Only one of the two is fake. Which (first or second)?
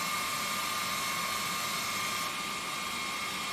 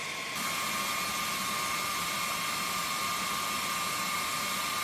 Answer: second